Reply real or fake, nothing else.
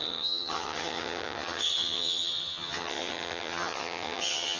fake